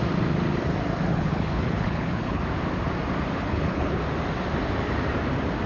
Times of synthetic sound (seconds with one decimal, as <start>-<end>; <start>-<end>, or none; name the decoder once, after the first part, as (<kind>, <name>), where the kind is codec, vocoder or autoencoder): 1.1-2.4 (codec, HILCodec); 3.3-4.0